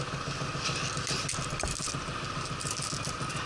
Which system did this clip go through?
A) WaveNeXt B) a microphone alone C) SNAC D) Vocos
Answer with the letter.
B